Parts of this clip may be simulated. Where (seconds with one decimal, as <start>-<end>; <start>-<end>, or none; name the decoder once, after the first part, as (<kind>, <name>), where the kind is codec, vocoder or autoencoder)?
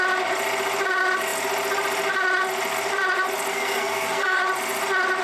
3.5-4.4 (codec, SNAC)